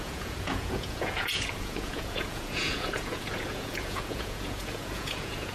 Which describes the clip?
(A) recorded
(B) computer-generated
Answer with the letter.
B